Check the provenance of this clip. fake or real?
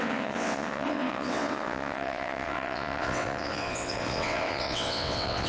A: fake